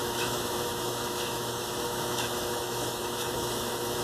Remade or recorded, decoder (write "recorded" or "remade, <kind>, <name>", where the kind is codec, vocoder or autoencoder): remade, autoencoder, DAC-VAE